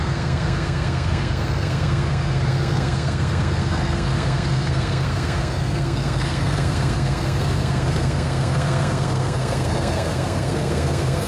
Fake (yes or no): yes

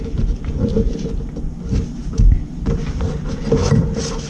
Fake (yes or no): no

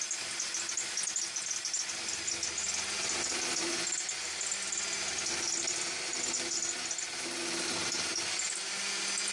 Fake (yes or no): no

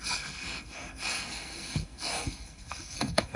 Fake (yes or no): yes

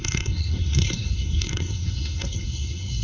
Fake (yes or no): yes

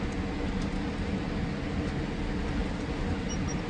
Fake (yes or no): no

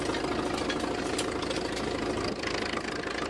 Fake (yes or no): no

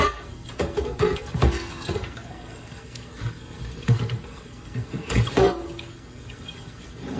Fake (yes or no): yes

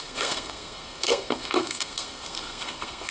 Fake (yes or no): yes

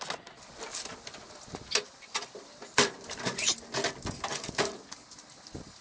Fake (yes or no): no